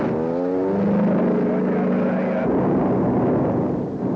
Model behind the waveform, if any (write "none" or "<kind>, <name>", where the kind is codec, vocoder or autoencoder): none